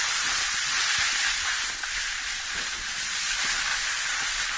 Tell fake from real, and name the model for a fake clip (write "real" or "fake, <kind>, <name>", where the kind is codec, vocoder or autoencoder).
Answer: real